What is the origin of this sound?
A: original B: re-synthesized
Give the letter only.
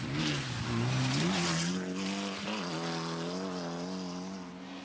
A